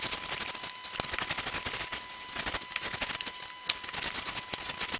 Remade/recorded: recorded